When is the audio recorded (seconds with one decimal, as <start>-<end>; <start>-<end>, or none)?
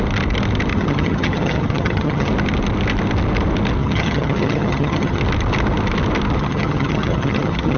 0.0-0.7; 2.3-3.8; 5.2-6.4